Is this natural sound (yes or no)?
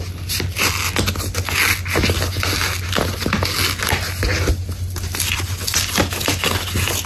yes